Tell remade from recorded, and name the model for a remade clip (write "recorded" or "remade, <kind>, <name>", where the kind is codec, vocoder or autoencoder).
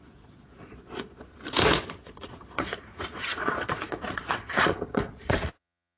remade, vocoder, Vocos